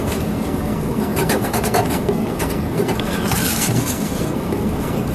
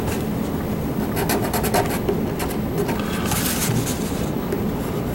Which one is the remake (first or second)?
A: first